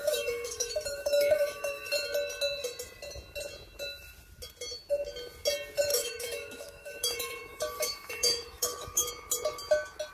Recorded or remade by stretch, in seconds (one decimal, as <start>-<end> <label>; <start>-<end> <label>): 0.0-1.8 remade; 1.8-5.9 recorded; 5.9-9.1 remade; 9.1-10.1 recorded